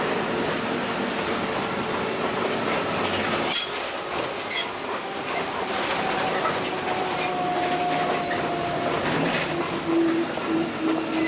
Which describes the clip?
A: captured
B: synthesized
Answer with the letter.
A